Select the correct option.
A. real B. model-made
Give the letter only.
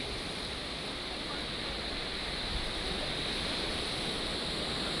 A